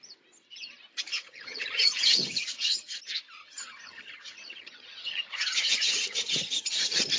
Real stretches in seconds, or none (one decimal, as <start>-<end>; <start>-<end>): 0.0-1.1; 3.0-3.4